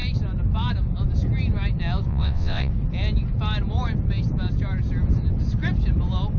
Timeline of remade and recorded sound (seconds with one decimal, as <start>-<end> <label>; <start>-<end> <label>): 0.0-2.1 recorded; 2.1-2.7 remade; 2.7-6.4 recorded